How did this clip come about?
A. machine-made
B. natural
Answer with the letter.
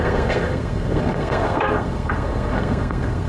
A